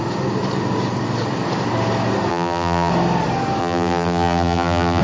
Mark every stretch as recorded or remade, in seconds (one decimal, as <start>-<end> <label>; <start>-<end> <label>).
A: 0.0-2.3 recorded; 2.3-2.9 remade; 2.9-3.6 recorded; 3.6-5.0 remade